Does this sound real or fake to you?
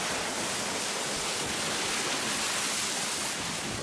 real